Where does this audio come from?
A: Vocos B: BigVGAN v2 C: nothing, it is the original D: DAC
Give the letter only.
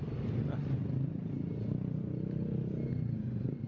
C